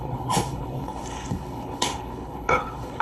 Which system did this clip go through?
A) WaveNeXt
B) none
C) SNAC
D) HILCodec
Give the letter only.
D